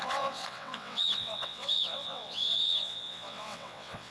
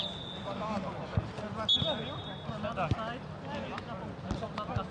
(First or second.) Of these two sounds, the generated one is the first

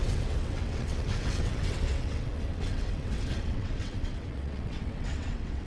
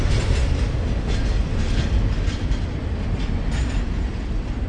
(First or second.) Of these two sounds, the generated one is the first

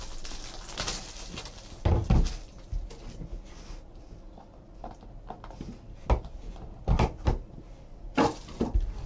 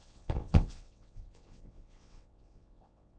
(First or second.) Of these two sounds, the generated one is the second